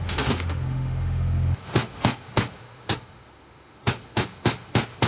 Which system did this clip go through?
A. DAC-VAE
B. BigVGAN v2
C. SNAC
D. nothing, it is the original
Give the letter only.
A